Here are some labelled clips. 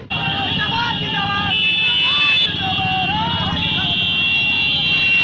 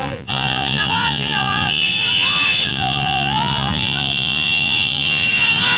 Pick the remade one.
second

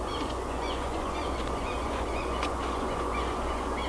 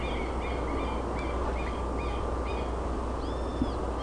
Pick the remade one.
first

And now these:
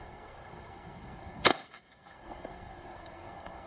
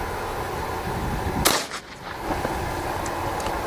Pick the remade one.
first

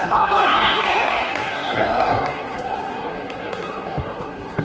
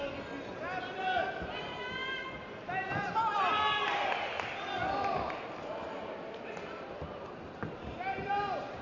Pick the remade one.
first